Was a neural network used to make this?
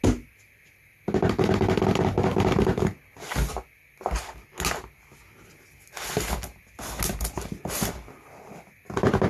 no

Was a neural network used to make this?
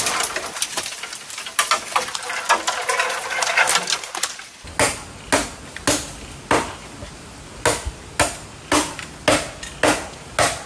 no